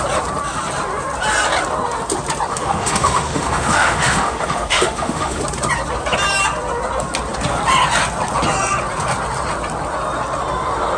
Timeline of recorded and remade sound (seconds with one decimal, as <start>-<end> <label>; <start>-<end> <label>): 0.0-2.5 recorded; 2.5-5.4 remade; 5.4-11.0 recorded